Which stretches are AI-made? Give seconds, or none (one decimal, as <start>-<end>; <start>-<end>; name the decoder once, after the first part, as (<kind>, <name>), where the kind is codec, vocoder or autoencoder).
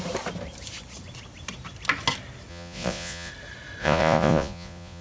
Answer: 2.5-3.3 (vocoder, Vocos); 3.8-5.0